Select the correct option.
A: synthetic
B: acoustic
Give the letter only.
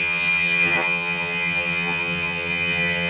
A